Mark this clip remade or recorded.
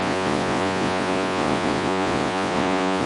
remade